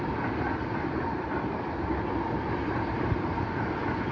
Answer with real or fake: fake